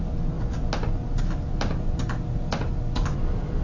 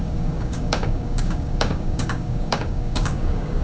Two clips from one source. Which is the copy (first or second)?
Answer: second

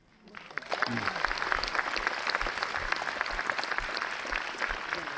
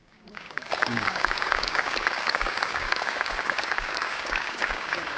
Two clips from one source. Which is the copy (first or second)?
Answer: second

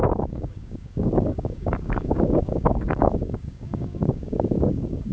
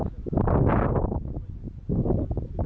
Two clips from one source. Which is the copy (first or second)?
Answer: first